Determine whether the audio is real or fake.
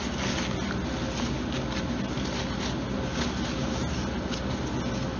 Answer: real